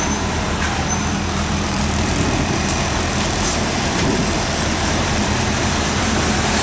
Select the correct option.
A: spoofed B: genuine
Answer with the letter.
A